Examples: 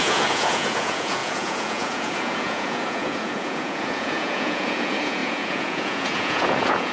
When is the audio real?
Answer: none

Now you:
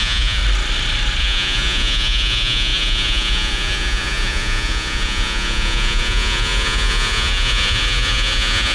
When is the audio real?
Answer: 0.4-1.2